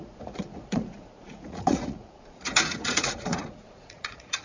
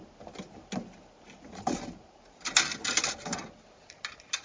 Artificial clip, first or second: first